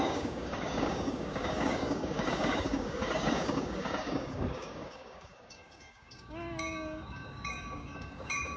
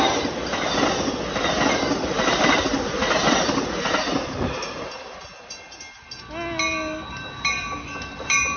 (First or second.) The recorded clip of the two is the second